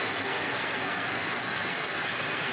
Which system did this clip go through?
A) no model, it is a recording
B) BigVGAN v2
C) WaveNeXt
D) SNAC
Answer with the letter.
D